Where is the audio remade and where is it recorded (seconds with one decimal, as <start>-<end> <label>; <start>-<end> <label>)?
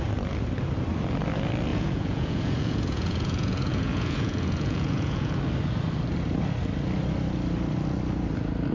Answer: 0.0-1.7 recorded; 1.7-5.4 remade; 5.4-8.7 recorded